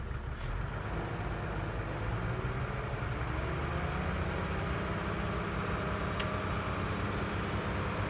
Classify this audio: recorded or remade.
recorded